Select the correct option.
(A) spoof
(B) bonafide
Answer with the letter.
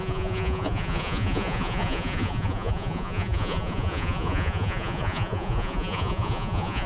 A